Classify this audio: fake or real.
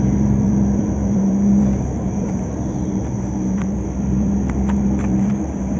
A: fake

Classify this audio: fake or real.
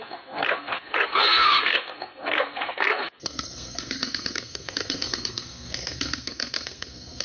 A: fake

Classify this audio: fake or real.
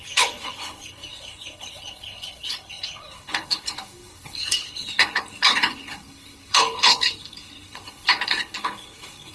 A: fake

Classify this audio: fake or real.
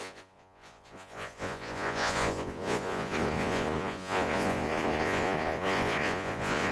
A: fake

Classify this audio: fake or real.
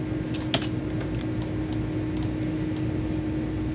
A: real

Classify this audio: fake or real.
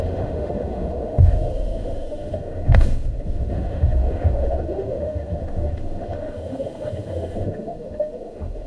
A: fake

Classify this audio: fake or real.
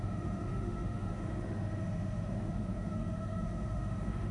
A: fake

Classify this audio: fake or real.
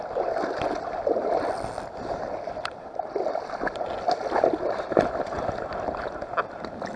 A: real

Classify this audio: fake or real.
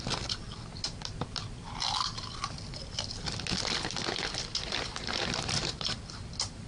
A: fake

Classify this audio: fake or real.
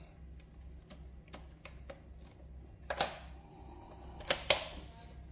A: real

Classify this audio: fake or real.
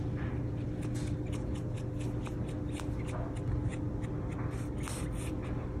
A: real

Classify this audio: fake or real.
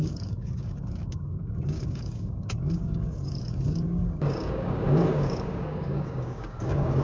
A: fake